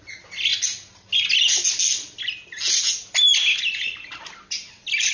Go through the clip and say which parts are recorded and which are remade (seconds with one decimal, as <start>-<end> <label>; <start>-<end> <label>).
0.0-5.1 recorded